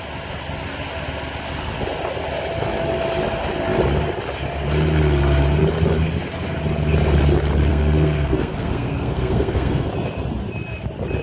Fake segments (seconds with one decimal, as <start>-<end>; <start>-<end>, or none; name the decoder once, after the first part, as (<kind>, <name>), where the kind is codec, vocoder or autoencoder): 7.7-9.9 (codec, SNAC)